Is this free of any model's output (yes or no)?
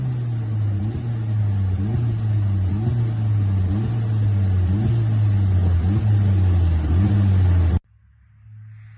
yes